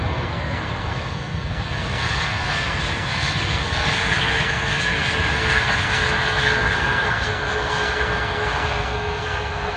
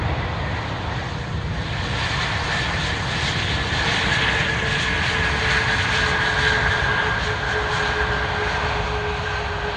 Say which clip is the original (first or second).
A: second